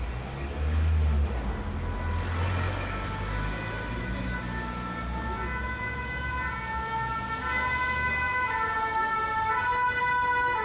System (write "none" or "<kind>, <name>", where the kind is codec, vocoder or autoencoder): none